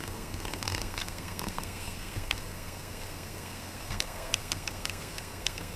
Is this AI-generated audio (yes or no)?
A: yes